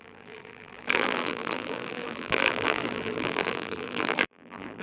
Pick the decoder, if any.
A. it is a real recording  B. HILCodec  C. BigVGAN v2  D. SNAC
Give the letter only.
C